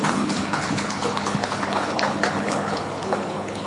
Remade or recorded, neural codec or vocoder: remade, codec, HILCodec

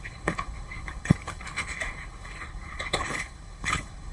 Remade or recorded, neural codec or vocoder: remade, codec, HILCodec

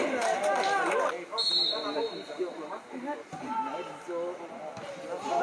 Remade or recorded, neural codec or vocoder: recorded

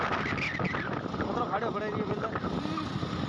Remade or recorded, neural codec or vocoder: recorded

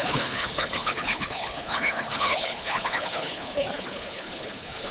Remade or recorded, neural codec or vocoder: remade, codec, HILCodec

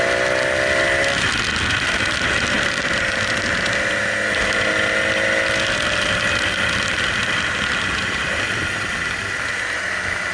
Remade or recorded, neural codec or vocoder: recorded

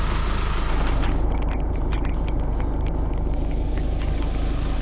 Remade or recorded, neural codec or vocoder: recorded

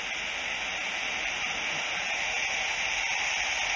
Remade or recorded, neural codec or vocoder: recorded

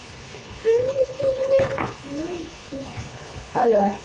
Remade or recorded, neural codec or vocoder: remade, codec, HILCodec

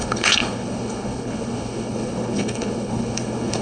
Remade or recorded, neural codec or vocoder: remade, codec, HILCodec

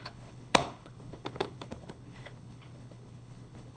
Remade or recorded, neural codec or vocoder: remade, codec, HILCodec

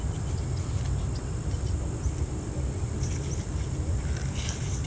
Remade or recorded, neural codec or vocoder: recorded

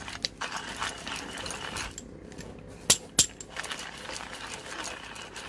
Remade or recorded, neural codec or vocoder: recorded